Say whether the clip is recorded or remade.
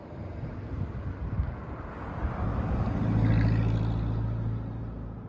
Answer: recorded